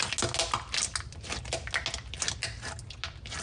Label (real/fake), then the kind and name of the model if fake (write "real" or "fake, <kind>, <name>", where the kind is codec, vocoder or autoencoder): real